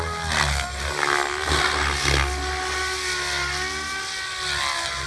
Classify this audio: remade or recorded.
recorded